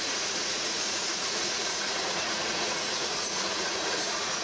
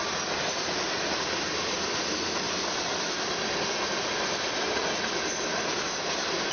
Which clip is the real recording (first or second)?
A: second